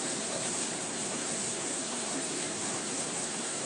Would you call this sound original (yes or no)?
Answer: no